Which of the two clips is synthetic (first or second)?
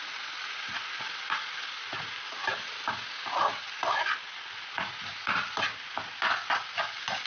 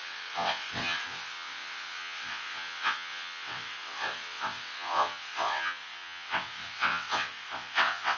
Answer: second